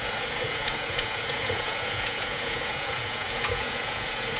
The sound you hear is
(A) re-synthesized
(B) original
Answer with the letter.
A